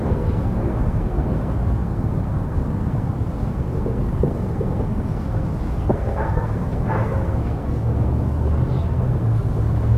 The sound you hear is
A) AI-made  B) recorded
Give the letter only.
A